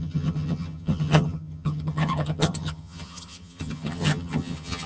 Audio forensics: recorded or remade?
remade